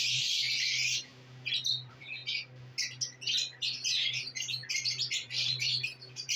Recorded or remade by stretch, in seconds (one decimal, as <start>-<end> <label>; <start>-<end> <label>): 0.0-1.1 remade; 1.1-1.7 recorded; 1.7-2.2 remade; 2.2-4.7 recorded; 4.7-6.4 remade